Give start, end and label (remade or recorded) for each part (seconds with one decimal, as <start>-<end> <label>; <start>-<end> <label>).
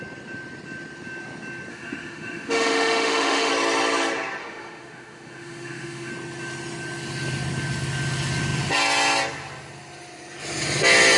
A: 0.0-1.7 recorded; 1.7-3.5 remade; 3.5-4.4 recorded; 4.4-6.1 remade; 6.1-11.2 recorded